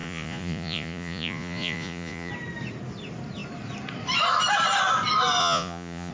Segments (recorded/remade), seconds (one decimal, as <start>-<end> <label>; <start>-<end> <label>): 0.0-2.3 remade; 2.3-5.4 recorded; 5.4-6.1 remade